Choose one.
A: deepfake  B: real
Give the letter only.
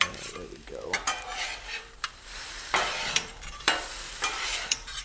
A